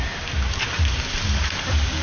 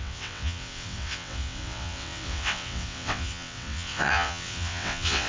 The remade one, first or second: second